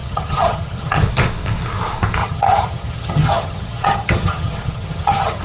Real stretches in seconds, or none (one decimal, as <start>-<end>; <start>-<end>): 1.0-2.2